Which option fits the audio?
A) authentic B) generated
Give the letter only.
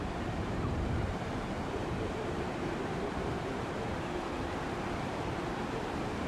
B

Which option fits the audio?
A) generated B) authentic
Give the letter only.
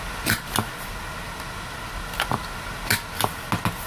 B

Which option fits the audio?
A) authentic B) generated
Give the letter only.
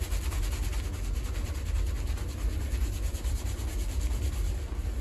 A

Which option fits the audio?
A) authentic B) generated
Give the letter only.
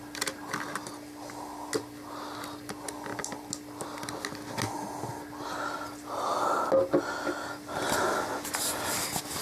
A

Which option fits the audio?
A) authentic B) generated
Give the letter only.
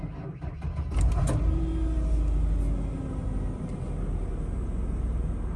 A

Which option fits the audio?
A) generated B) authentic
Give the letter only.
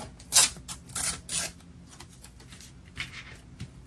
B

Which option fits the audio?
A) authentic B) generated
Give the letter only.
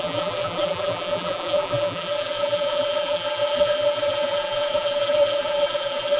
B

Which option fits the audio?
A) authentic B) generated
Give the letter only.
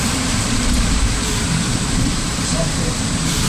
B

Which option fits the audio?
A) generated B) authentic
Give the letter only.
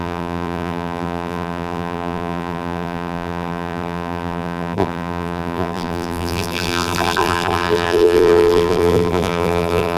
A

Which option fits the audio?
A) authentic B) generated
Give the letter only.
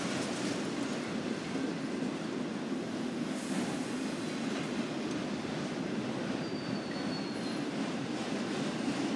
A